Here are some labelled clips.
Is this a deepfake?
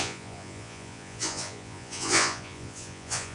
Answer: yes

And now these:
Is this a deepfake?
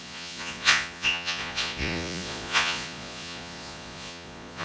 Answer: yes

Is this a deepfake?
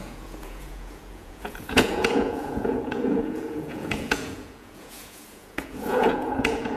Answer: yes